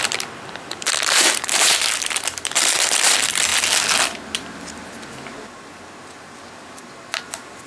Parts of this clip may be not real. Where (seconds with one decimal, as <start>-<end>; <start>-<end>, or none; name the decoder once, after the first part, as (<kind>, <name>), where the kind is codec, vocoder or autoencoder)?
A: 0.0-3.5 (vocoder, BigVGAN v2); 7.2-7.7